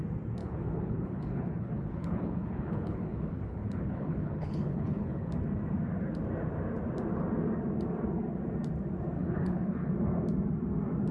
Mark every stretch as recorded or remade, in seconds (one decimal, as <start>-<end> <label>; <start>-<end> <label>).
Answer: 0.0-0.4 recorded; 0.4-5.3 remade; 5.3-9.2 recorded; 9.2-9.9 remade; 9.9-11.1 recorded